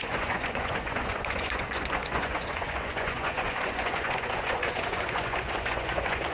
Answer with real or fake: fake